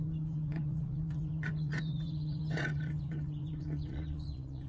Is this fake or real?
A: fake